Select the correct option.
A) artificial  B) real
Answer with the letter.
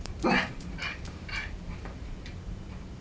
A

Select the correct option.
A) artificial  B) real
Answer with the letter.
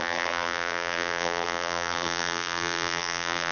A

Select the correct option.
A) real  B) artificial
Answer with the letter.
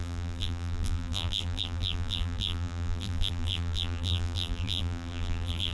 B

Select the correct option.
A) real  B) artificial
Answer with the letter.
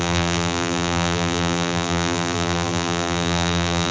B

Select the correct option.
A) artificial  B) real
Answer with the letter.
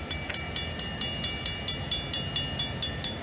B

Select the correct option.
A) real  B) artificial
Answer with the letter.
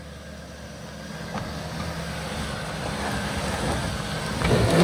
A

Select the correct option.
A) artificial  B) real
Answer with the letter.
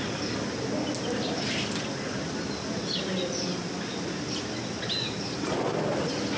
B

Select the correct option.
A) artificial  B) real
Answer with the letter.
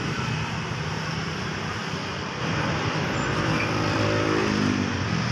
A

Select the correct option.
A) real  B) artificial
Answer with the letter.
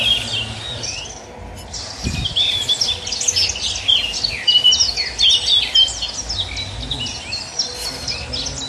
A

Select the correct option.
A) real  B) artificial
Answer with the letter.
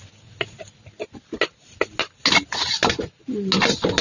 A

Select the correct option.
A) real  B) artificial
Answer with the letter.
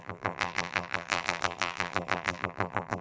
B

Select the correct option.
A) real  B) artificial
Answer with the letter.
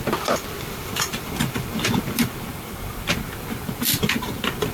A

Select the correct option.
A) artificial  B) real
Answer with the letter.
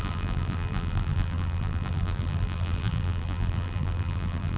A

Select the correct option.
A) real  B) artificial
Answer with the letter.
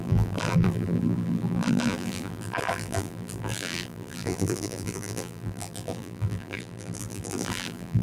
B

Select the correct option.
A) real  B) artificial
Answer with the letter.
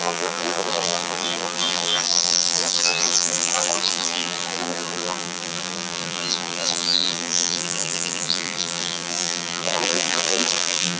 B